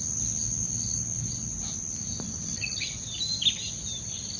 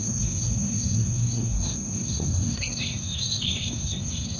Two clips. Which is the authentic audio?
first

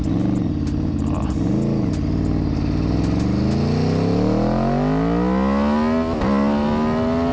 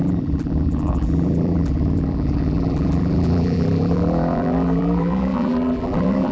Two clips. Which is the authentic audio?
first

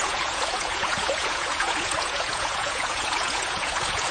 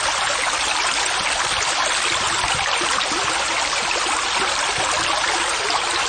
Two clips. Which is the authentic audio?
second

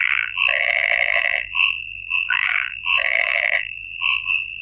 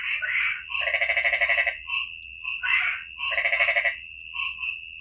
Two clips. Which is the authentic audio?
second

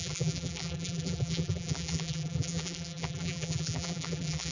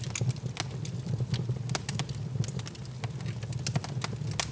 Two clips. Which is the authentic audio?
second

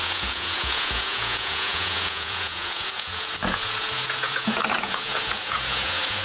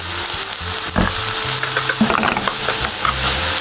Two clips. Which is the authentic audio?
second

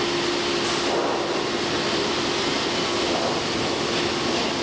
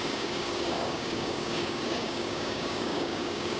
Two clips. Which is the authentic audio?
first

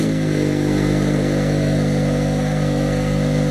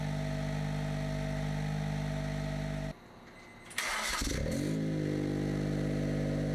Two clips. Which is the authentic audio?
second